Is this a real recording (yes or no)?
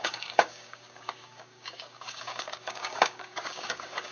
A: no